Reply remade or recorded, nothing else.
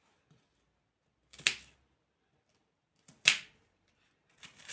recorded